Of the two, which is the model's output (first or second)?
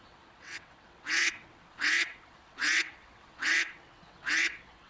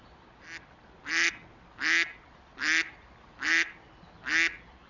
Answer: first